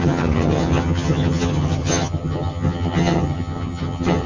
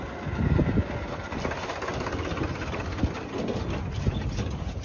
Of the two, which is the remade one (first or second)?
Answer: first